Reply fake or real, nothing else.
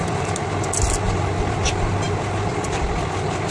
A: real